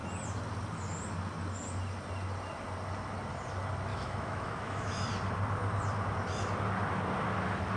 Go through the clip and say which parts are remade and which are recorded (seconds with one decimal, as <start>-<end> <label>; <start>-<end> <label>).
0.0-3.9 recorded; 3.9-5.0 remade; 5.0-7.8 recorded